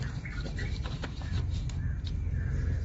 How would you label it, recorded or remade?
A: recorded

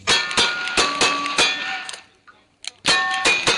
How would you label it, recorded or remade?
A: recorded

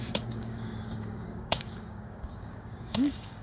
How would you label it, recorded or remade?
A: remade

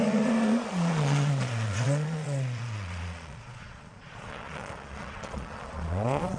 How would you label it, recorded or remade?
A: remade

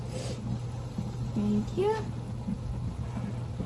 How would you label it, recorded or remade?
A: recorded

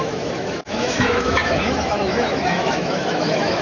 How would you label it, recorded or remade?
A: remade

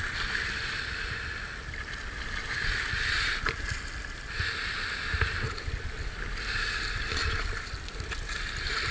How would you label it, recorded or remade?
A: recorded